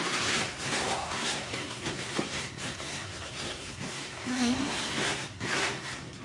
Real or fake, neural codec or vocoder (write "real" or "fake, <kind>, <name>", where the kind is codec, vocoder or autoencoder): fake, codec, SNAC